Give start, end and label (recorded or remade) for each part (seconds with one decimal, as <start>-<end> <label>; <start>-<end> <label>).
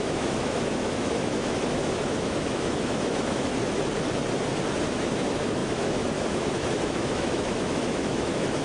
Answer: 0.0-3.5 remade; 3.5-4.9 recorded; 4.9-8.6 remade